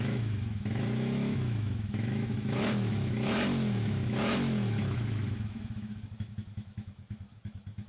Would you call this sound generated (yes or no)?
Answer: yes